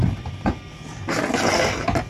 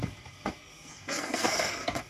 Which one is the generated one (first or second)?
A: second